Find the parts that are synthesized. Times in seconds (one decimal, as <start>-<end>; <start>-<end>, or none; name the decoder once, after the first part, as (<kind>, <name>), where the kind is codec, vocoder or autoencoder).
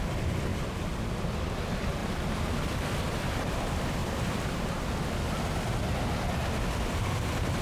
0.5-1.1 (vocoder, BigVGAN v2); 2.0-2.7